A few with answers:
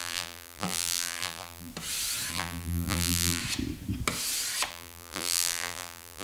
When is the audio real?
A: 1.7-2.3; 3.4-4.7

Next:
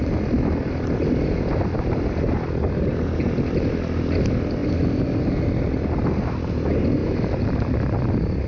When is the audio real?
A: 0.0-4.6; 5.5-7.0

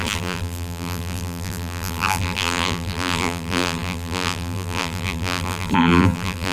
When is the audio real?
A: none

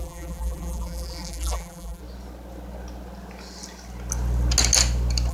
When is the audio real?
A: 2.0-5.3